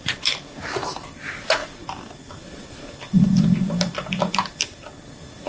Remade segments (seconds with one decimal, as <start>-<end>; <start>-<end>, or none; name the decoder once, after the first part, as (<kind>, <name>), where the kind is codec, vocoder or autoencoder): none